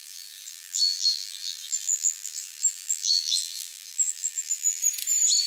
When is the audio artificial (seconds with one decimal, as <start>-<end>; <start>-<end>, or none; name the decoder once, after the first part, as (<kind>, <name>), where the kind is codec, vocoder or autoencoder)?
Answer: 0.0-4.8 (vocoder, BigVGAN v2)